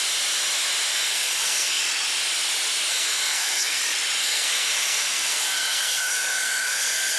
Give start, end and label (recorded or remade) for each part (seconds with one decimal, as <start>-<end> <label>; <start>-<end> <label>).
0.0-0.9 recorded; 0.9-1.8 remade; 1.8-2.9 recorded; 2.9-3.8 remade; 3.8-4.2 recorded; 4.2-7.2 remade